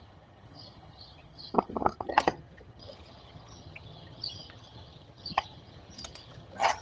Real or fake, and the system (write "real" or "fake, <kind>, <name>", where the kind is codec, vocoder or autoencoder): fake, vocoder, HiFi-GAN